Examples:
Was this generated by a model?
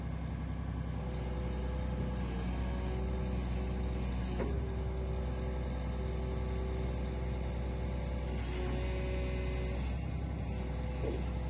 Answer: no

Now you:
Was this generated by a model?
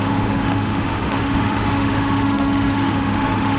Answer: yes